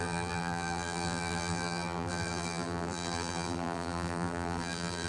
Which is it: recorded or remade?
remade